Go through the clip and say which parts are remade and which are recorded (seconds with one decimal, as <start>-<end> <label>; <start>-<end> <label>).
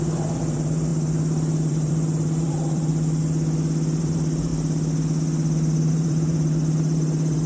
0.0-2.9 remade; 2.9-4.0 recorded; 4.0-4.5 remade; 4.5-5.9 recorded; 5.9-7.5 remade